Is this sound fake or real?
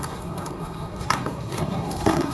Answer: fake